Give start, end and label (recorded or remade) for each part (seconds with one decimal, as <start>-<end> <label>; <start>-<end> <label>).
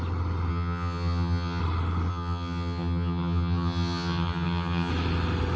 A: 0.0-0.5 recorded; 0.5-1.6 remade; 1.6-2.1 recorded; 2.1-4.9 remade; 4.9-5.6 recorded